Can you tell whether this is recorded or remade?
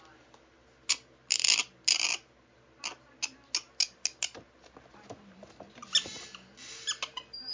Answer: recorded